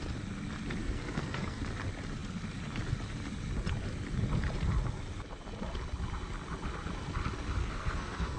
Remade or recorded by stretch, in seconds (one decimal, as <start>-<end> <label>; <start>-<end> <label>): 0.0-0.8 recorded; 0.8-1.6 remade; 1.6-7.6 recorded; 7.6-8.4 remade